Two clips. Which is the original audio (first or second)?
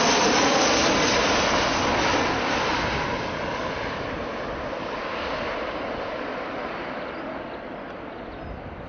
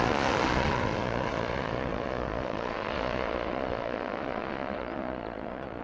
first